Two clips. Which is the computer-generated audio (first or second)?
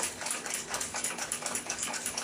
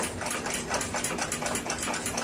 first